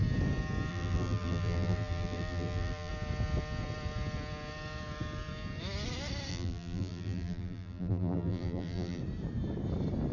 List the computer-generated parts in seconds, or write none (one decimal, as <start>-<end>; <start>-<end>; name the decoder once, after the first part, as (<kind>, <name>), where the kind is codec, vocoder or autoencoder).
0.7-2.9 (vocoder, BigVGAN v2); 6.3-9.0